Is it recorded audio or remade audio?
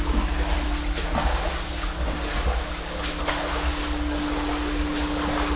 recorded